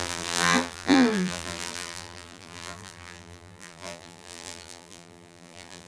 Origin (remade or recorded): remade